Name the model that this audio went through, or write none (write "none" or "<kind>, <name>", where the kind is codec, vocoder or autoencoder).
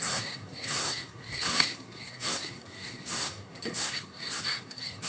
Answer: codec, SNAC